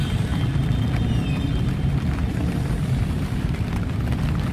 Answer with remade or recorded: remade